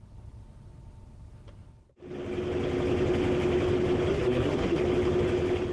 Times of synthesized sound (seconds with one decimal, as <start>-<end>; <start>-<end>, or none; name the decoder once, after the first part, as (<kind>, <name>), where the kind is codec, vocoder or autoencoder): 4.1-4.8 (codec, SNAC)